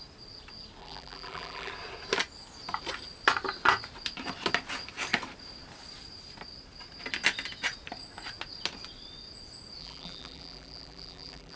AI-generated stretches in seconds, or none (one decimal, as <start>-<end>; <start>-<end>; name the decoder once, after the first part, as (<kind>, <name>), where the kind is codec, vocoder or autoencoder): 0.8-1.7 (vocoder, BigVGAN v2); 9.8-11.6